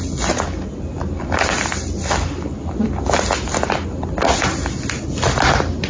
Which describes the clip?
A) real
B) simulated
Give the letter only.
A